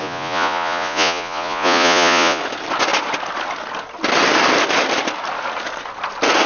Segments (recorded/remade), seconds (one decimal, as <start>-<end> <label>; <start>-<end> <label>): 0.0-2.4 remade; 2.4-6.5 recorded